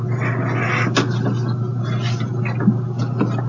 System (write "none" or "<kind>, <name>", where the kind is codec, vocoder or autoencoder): none